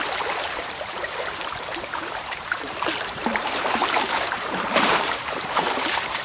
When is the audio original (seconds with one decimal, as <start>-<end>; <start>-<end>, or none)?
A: none

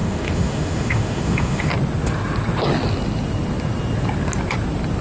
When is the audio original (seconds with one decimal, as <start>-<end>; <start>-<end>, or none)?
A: 1.7-5.0

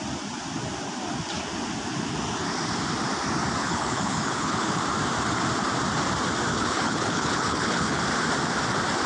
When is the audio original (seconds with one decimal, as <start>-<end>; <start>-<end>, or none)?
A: 0.0-3.6; 4.8-6.5; 8.0-9.1

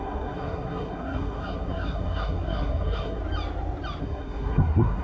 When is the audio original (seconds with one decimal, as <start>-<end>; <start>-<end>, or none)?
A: 3.2-4.0

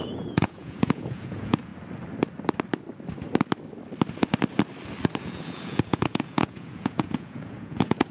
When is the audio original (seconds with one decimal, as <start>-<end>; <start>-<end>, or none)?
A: 1.7-5.2

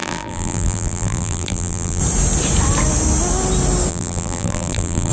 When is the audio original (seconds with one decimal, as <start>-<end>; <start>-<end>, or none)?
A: 2.0-3.9

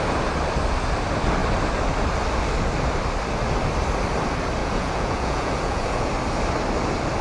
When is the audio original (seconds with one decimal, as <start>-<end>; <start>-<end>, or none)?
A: 0.0-4.6; 6.1-7.2

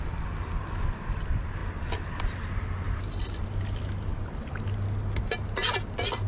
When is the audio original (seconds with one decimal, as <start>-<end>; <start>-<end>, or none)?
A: 0.0-6.3